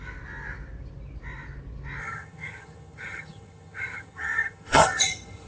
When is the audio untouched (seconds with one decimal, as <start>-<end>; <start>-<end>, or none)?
0.0-2.0